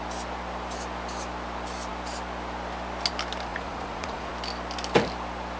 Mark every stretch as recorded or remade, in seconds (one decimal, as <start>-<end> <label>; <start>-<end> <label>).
0.0-3.5 recorded; 3.5-4.3 remade; 4.3-5.6 recorded